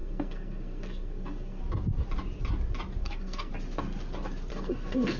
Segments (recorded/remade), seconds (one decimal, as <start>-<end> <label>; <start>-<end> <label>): 0.0-1.6 remade; 1.6-3.0 recorded; 3.0-3.5 remade; 3.5-4.5 recorded; 4.5-5.2 remade